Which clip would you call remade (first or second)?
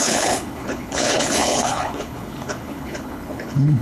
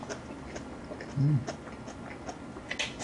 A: first